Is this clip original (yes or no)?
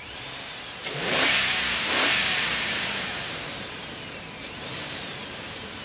no